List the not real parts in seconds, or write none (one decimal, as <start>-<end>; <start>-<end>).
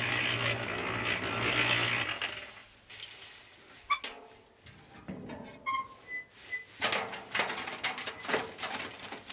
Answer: none